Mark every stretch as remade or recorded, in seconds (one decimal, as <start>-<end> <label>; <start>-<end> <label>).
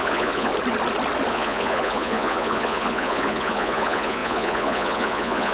0.0-0.5 remade; 0.5-1.3 recorded; 1.3-5.5 remade